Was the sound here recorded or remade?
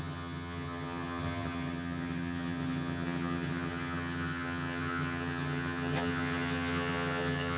remade